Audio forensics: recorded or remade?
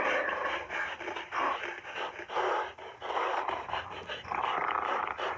recorded